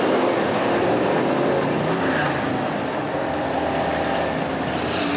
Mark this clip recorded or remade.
recorded